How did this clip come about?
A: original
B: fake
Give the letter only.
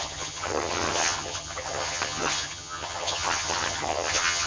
B